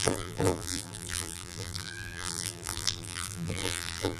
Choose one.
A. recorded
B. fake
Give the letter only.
B